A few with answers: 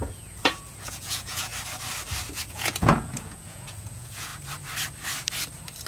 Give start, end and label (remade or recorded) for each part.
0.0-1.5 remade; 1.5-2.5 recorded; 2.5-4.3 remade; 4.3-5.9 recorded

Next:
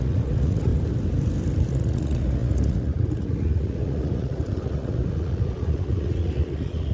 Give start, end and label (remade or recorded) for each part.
0.0-0.7 remade; 0.7-1.7 recorded; 1.7-6.9 remade